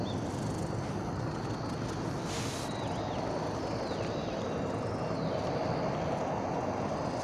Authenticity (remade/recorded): recorded